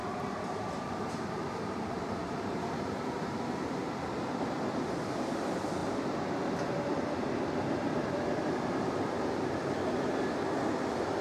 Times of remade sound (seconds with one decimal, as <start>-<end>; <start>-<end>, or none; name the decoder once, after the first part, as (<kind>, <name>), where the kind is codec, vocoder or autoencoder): 0.0-2.6 (vocoder, BigVGAN v2)

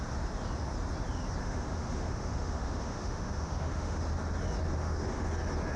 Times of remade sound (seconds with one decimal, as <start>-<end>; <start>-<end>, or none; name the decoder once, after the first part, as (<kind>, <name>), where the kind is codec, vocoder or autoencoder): 1.4-4.0 (autoencoder, DAC-VAE); 4.8-5.3

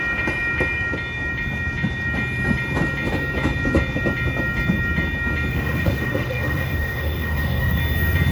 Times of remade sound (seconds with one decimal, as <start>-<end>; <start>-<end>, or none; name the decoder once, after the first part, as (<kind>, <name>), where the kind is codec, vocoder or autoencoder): 5.5-7.8 (autoencoder, DAC-VAE)

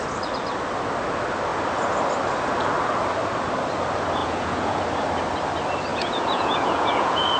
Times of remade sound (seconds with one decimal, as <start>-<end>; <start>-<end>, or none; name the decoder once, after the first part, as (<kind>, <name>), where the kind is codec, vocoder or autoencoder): 4.2-4.8 (vocoder, Vocos); 5.9-7.4

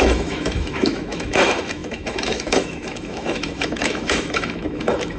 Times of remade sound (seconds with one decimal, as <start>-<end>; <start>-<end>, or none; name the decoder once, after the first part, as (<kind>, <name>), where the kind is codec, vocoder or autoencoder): 0.0-5.2 (autoencoder, DAC-VAE)

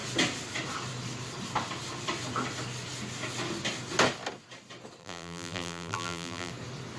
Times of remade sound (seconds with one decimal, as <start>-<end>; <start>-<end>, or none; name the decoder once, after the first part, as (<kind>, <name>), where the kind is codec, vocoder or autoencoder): 5.0-6.5 (vocoder, BigVGAN v2)

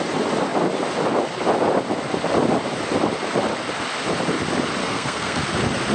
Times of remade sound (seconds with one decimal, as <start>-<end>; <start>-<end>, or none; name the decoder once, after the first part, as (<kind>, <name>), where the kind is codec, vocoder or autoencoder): 4.8-5.4 (codec, SNAC)